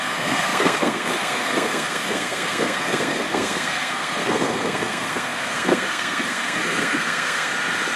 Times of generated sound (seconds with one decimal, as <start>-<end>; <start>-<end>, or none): 0.0-7.5